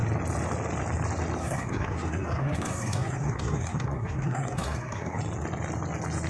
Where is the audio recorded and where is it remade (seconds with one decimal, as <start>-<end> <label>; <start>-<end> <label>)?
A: 0.0-1.4 recorded; 1.4-5.2 remade; 5.2-6.3 recorded